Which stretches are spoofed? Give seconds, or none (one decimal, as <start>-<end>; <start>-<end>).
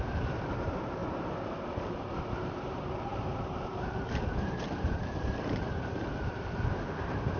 0.0-7.4